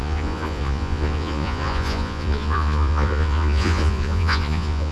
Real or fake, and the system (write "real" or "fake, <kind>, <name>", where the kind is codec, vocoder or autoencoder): fake, vocoder, Vocos